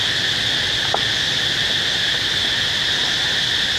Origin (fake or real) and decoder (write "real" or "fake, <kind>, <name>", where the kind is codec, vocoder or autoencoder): real